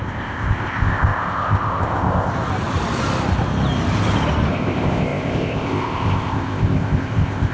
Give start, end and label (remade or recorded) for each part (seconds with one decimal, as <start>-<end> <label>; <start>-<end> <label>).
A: 0.0-2.3 remade; 2.3-4.5 recorded; 4.5-7.5 remade